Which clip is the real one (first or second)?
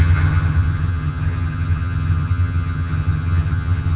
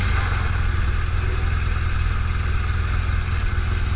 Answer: second